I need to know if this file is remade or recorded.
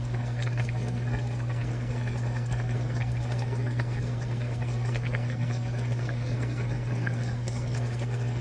remade